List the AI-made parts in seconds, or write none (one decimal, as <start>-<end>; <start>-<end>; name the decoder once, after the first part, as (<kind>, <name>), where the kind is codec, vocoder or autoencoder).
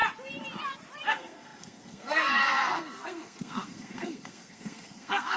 1.1-5.4 (codec, SNAC)